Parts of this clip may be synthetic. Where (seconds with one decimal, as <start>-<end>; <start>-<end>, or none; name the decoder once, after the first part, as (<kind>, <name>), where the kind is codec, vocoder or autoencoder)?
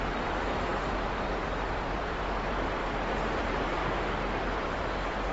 0.0-2.8 (vocoder, BigVGAN v2); 3.4-3.8; 4.4-5.3